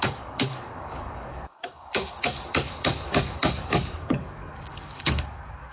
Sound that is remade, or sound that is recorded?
remade